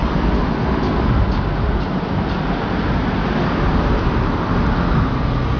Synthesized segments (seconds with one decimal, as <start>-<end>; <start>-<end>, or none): none